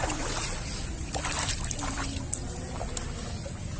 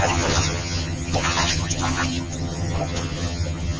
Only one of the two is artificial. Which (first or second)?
second